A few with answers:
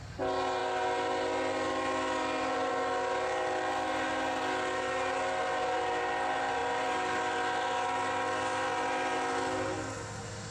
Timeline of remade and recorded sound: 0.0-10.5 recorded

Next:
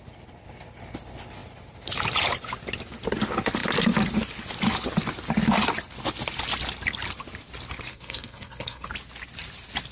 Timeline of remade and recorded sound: 0.0-7.9 recorded; 7.9-8.9 remade; 8.9-9.9 recorded

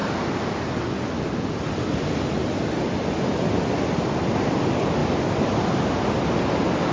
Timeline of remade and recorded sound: 0.0-6.9 recorded

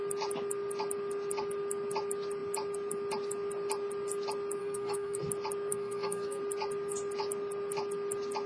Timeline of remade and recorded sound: 0.0-4.6 recorded; 4.6-5.2 remade; 5.2-5.7 recorded; 5.7-6.4 remade; 6.4-8.5 recorded